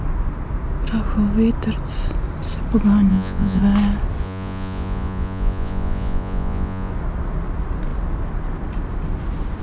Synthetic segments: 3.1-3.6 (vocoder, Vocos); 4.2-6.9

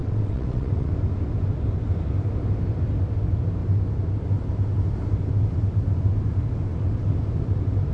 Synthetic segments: 0.0-0.9 (vocoder, WaveNeXt)

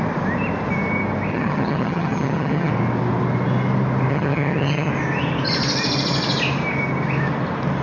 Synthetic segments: 1.3-2.7 (vocoder, HiFi-GAN); 4.1-4.9

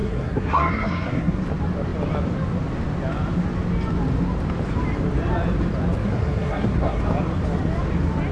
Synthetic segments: 0.0-1.4 (codec, SNAC); 6.0-7.0

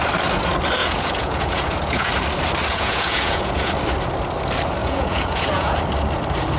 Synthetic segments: 0.8-2.1 (vocoder, Vocos); 2.7-3.7; 4.8-5.8